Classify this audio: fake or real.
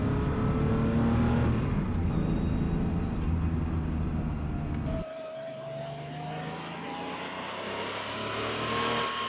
real